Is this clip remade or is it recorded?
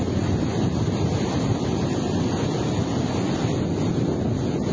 recorded